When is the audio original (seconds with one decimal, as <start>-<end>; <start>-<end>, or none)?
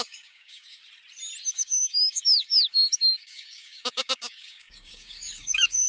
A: 0.8-1.5